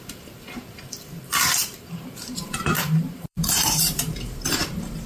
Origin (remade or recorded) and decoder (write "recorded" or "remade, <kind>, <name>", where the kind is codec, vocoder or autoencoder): remade, vocoder, BigVGAN v2